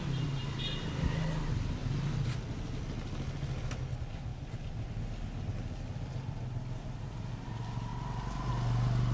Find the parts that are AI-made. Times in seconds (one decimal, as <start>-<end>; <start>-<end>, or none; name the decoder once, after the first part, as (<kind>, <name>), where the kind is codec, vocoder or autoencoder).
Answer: 4.3-4.9 (vocoder, BigVGAN v2)